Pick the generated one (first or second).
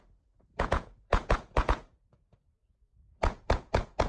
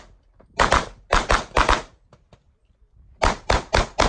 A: first